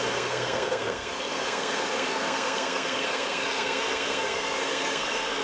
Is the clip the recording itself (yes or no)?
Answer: no